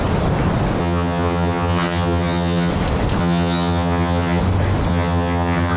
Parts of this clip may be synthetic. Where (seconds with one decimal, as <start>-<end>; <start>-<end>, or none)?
0.8-2.7; 3.2-4.4; 4.9-5.8